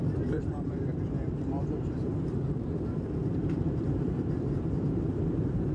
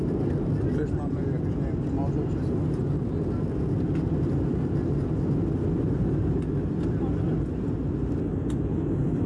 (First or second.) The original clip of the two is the second